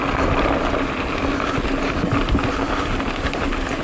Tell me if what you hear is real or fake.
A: real